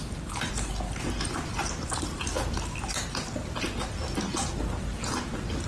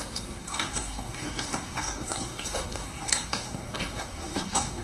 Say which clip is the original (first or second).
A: first